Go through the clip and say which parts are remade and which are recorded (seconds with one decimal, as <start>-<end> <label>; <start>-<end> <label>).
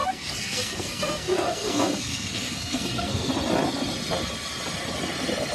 0.0-3.3 remade; 3.3-5.5 recorded